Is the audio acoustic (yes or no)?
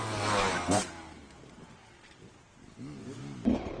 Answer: yes